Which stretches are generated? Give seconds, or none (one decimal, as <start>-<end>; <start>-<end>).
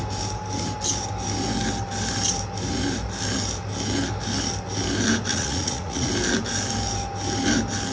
5.3-6.1